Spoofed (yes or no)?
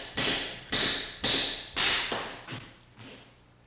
no